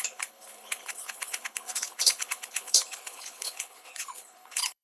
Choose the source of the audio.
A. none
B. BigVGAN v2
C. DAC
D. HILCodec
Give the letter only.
D